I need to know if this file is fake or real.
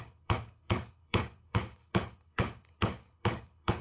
fake